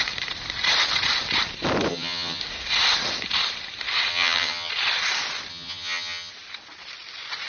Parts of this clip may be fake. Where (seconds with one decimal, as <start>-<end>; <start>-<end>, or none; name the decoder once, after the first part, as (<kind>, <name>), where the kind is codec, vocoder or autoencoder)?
1.9-2.4 (vocoder, HiFi-GAN); 4.1-4.7; 5.5-6.3